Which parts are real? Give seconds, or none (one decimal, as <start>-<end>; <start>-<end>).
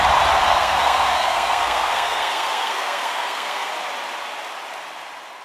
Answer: 0.0-0.5; 3.7-5.4